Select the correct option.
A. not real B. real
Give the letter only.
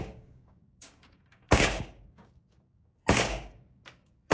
A